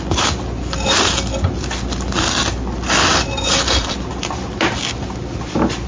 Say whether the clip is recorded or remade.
recorded